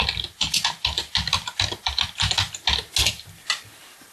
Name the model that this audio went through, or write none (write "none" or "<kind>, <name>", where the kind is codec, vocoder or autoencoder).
none